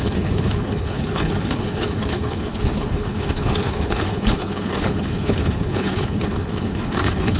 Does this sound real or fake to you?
fake